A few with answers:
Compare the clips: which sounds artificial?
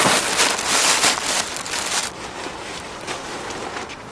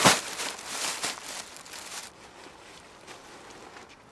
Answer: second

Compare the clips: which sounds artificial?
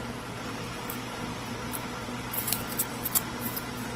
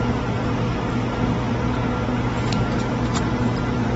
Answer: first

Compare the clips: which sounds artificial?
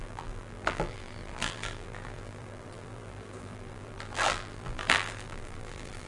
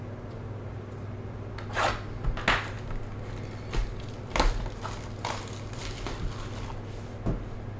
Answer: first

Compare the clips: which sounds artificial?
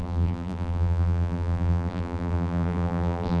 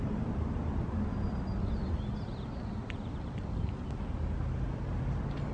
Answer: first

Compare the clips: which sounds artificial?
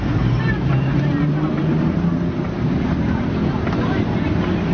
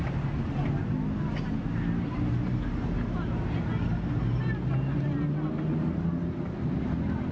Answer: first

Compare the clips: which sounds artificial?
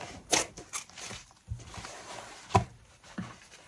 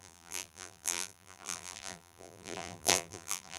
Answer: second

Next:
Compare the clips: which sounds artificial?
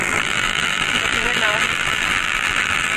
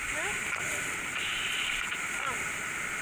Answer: first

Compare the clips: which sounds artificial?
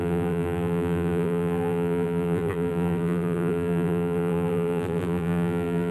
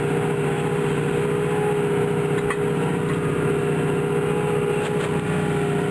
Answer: first